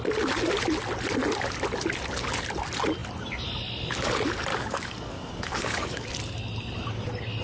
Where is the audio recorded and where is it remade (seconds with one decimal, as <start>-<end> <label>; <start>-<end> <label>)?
0.0-4.5 recorded; 4.5-6.1 remade; 6.1-7.4 recorded